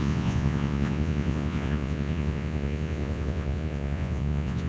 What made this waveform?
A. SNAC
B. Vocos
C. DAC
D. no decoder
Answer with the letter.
B